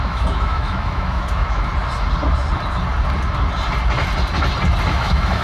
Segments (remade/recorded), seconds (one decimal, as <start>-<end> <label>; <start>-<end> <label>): 0.0-1.7 remade; 1.7-4.9 recorded; 4.9-5.4 remade